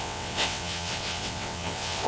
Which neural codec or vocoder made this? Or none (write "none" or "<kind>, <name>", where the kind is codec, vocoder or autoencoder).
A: vocoder, WaveNeXt